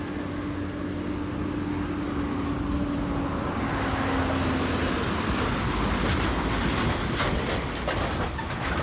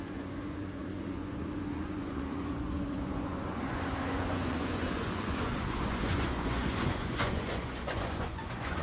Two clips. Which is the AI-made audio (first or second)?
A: second